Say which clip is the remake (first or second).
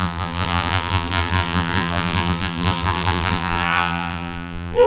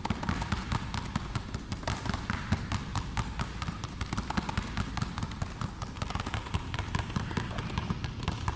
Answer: first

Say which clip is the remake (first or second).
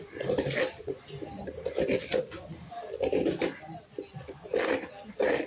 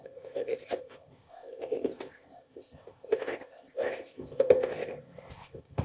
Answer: second